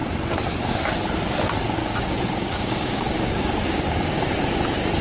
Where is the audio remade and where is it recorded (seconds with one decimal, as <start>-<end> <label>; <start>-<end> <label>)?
0.0-1.8 recorded; 1.8-4.2 remade; 4.2-5.0 recorded